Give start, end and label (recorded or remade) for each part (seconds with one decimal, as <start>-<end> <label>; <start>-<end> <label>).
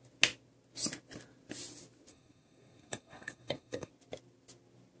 0.0-2.1 recorded; 2.1-3.9 remade; 3.9-5.0 recorded